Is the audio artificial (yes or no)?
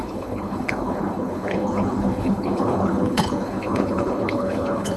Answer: yes